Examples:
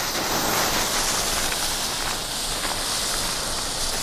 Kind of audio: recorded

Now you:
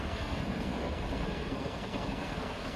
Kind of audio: remade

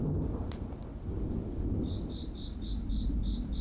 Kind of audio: recorded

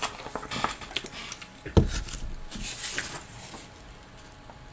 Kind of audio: recorded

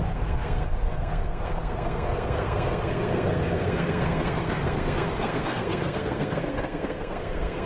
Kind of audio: remade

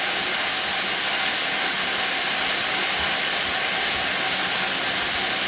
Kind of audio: recorded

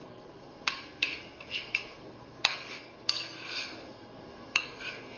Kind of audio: remade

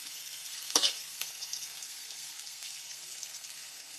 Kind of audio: remade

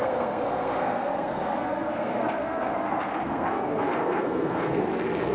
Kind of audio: remade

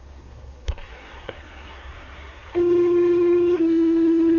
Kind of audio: remade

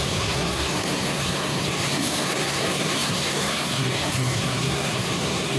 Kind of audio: remade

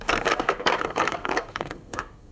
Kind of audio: remade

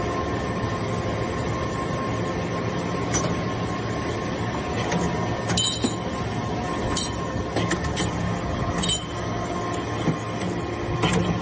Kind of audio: recorded